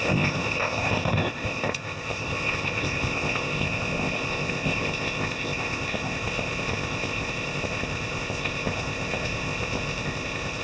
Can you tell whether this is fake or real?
fake